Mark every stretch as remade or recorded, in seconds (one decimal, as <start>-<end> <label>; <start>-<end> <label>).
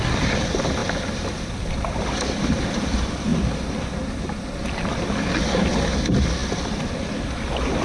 0.0-3.3 remade; 3.3-5.4 recorded; 5.4-7.8 remade